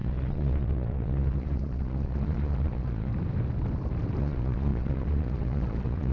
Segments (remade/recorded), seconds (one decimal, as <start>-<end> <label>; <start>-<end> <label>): 0.0-3.1 remade; 3.1-4.2 recorded; 4.2-6.1 remade